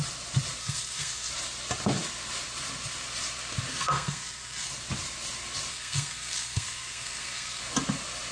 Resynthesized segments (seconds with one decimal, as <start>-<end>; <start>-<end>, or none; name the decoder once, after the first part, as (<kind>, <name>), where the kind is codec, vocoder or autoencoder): 0.6-1.3 (codec, SNAC); 3.7-4.7; 5.7-7.6